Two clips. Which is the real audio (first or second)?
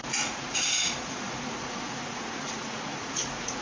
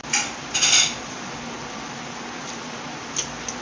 second